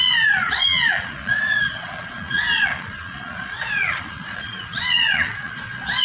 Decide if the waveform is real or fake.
fake